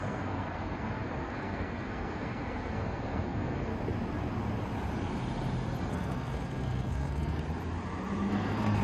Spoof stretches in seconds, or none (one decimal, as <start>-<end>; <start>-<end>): 0.0-3.7; 5.9-7.4; 8.3-8.8